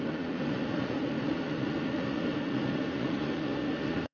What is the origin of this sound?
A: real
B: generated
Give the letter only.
B